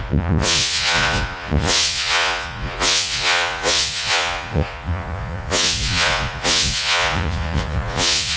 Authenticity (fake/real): fake